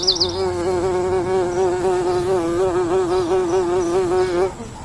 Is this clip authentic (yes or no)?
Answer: yes